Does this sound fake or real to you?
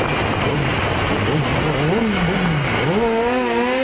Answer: real